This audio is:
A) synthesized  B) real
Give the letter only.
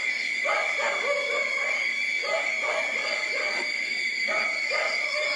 A